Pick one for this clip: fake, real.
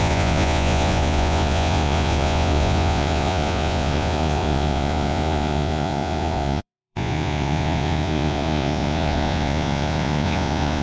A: fake